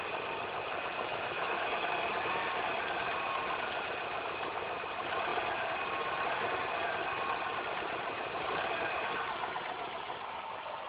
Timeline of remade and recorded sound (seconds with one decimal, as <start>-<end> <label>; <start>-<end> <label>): 0.0-1.1 recorded; 1.1-1.9 remade; 1.9-10.9 recorded